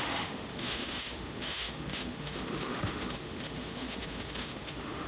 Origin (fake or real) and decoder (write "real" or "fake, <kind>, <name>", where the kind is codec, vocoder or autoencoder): fake, autoencoder, DAC-VAE